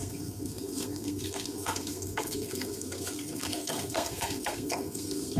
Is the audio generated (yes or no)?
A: yes